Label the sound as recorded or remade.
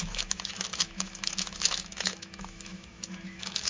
remade